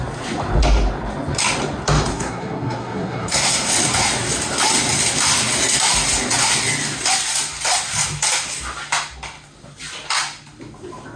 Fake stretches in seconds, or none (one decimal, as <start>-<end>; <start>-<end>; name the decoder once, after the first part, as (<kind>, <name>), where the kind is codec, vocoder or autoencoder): 2.1-3.7 (codec, SNAC)